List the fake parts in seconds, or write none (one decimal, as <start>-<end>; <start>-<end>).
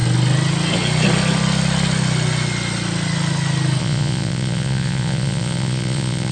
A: 3.8-6.3